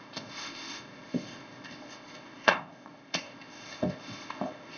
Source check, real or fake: fake